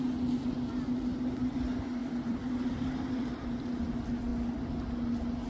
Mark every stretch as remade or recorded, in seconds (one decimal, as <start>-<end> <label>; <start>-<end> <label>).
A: 0.0-2.0 recorded; 2.0-3.4 remade; 3.4-5.5 recorded